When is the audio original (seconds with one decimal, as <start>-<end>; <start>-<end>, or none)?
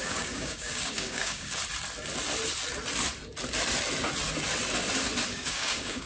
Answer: 1.6-5.3